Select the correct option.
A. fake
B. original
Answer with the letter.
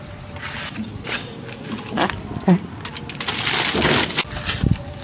B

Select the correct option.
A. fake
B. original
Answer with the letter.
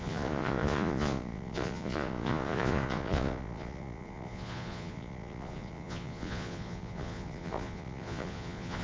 A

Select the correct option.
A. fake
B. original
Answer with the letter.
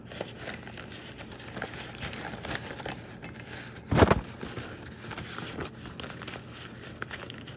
B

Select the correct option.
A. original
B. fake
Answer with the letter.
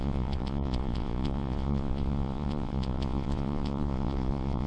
B